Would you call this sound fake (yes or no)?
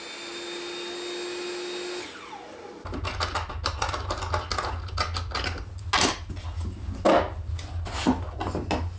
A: no